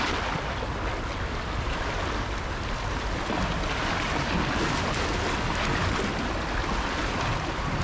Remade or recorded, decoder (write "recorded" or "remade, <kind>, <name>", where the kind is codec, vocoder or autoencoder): recorded